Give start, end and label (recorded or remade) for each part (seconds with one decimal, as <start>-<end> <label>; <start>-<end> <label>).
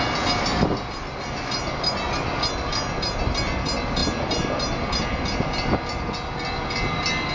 0.0-7.3 recorded